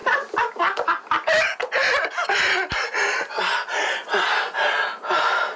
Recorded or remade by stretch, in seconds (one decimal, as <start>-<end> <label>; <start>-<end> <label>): 0.0-5.6 recorded